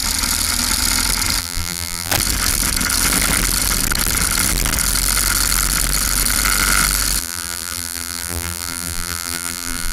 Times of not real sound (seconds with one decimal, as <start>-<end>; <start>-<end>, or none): 1.4-2.1; 7.2-9.9